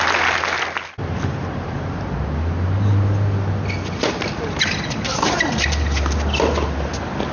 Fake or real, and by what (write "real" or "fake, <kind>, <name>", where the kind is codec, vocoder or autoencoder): real